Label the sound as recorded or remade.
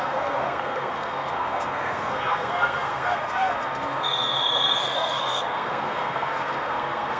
remade